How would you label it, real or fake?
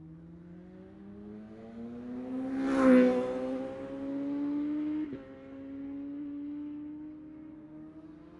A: real